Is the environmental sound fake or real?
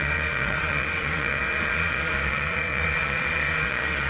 fake